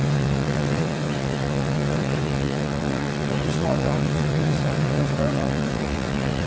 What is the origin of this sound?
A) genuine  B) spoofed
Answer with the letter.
B